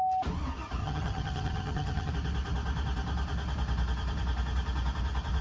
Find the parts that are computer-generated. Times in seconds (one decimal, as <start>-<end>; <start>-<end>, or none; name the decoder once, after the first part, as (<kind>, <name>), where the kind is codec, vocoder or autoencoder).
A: 0.8-2.1 (vocoder, HiFi-GAN)